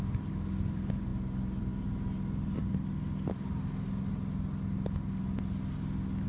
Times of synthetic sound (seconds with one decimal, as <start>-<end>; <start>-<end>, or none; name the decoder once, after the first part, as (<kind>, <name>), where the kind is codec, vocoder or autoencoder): none